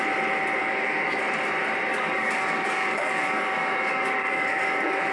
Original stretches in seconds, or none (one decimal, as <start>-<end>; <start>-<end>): 0.0-0.6; 1.2-1.9